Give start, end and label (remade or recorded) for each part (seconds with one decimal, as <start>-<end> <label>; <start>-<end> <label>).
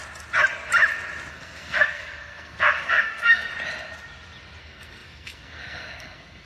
0.0-1.3 recorded; 1.3-3.5 remade; 3.5-4.6 recorded; 4.6-6.5 remade